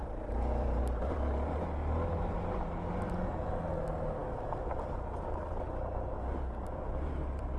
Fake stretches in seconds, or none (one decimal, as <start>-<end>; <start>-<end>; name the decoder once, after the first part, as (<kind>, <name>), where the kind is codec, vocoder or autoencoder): 0.0-0.8 (vocoder, BigVGAN v2); 2.1-2.9